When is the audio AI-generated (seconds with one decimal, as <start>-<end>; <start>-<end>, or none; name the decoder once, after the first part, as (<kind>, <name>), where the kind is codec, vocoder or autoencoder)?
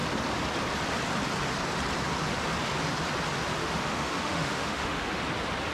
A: 3.6-5.2 (autoencoder, DAC-VAE)